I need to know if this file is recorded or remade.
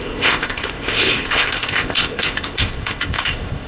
remade